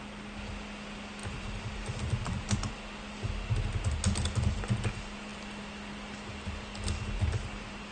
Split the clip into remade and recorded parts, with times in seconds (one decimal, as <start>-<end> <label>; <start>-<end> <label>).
0.0-1.2 recorded; 1.2-2.7 remade; 2.7-7.9 recorded